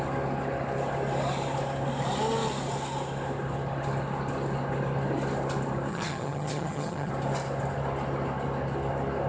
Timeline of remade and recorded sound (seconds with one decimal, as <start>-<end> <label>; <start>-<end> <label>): 0.0-5.9 recorded; 5.9-7.1 remade; 7.1-9.3 recorded